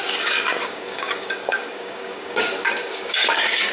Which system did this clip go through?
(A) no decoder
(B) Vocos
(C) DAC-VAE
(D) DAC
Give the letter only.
D